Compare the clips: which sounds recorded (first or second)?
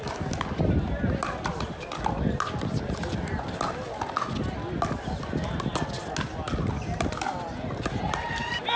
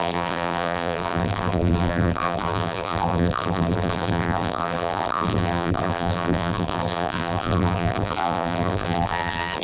first